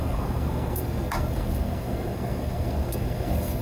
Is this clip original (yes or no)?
no